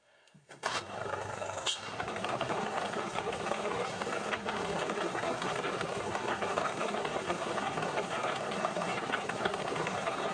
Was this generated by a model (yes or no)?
yes